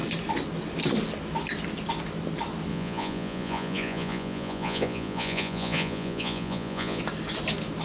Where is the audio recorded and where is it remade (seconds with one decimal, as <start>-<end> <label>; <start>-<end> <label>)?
0.0-2.7 recorded; 2.7-7.0 remade; 7.0-7.8 recorded